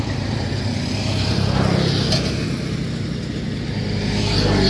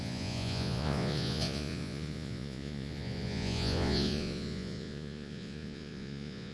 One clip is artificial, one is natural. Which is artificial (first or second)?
second